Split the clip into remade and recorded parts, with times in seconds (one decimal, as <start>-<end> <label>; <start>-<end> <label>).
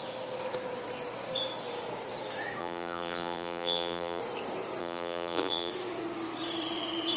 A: 0.0-2.6 recorded; 2.6-4.2 remade; 4.2-4.8 recorded; 4.8-5.7 remade; 5.7-7.2 recorded